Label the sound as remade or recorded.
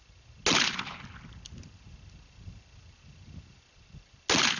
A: recorded